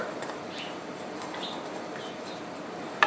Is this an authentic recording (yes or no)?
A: no